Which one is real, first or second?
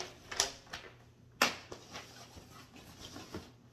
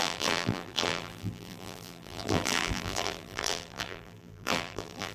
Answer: first